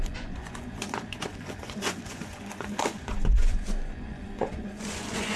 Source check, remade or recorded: remade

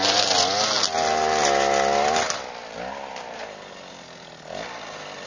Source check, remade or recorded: recorded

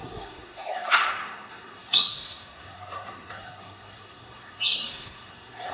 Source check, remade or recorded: remade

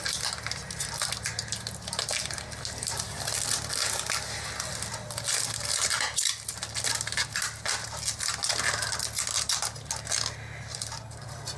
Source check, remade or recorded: recorded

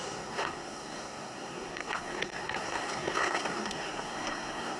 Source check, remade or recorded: remade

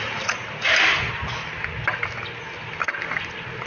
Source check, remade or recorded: recorded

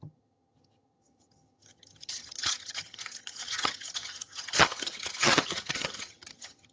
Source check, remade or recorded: remade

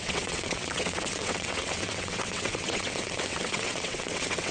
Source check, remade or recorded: remade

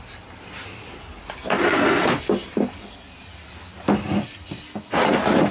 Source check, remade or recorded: recorded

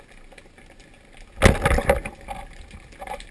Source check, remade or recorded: recorded